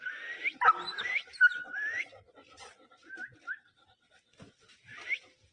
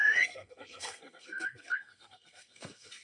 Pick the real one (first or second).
first